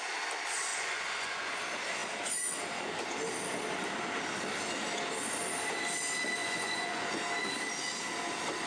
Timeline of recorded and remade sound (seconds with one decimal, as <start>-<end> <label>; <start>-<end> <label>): 0.0-0.7 recorded; 0.7-1.6 remade; 1.6-6.4 recorded; 6.4-7.2 remade; 7.2-8.7 recorded